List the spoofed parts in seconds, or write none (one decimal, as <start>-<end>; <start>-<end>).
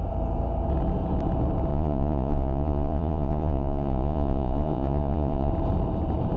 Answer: 1.7-5.5